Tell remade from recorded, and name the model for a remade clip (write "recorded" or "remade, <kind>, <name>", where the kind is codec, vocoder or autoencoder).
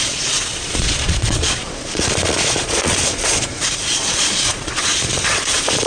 remade, vocoder, Vocos